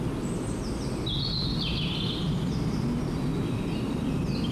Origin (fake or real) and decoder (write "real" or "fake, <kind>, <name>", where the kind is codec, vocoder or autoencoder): real